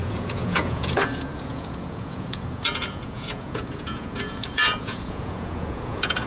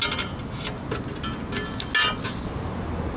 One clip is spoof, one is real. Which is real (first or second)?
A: second